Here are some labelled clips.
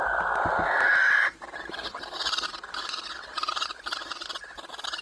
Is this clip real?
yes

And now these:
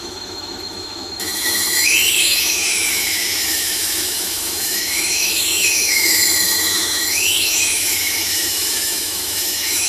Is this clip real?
no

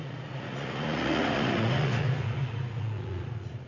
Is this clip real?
no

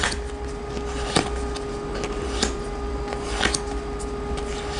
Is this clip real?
yes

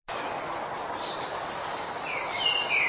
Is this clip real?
yes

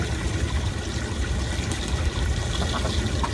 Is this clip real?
yes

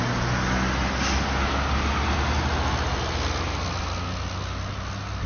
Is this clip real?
yes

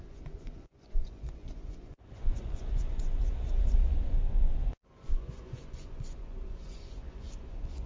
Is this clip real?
no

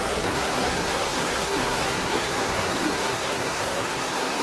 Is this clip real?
no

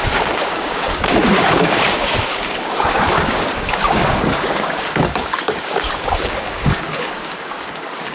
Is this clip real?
no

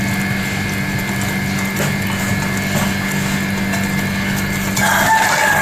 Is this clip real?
yes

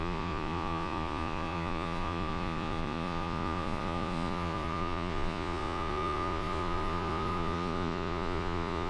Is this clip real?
no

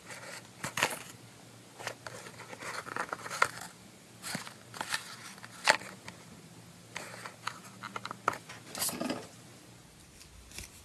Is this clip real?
yes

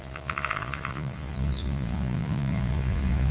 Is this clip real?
no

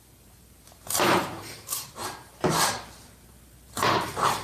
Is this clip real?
no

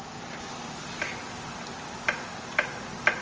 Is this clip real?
yes